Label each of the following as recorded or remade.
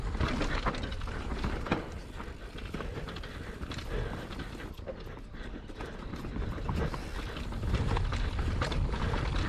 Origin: remade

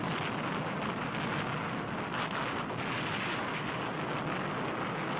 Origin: recorded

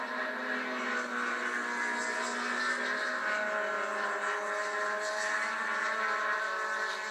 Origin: recorded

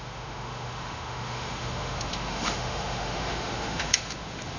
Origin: remade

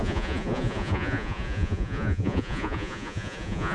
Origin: remade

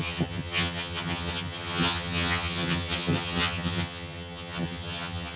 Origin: remade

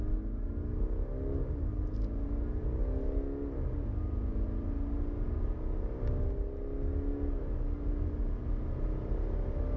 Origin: recorded